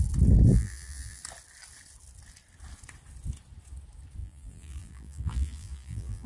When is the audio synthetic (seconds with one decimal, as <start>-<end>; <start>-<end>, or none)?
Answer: 0.5-1.2; 4.2-6.3

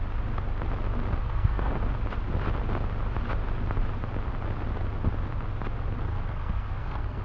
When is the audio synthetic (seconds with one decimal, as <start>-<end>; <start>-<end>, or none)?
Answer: 1.2-1.7; 6.1-7.2

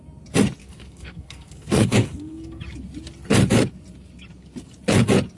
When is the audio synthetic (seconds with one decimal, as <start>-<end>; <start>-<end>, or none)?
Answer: 0.6-2.6

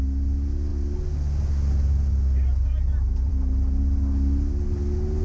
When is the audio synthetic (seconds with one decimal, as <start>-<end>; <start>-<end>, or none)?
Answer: none

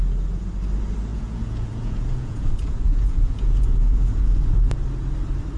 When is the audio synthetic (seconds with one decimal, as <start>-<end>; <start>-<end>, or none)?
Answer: 1.1-4.5

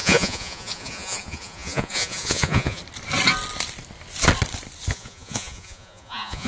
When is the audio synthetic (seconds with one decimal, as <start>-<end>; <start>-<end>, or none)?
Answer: 0.0-2.8; 4.9-6.5

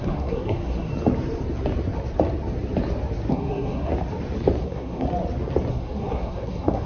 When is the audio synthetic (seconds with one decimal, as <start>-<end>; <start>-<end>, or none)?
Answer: 0.0-0.9; 3.3-3.9; 4.6-5.1; 5.7-6.9

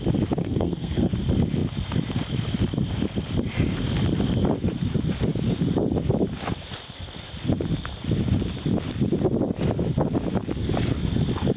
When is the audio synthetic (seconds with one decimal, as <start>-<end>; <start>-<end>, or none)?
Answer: 0.4-1.1